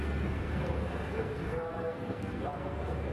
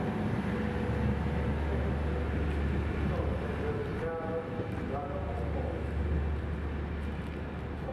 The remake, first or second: first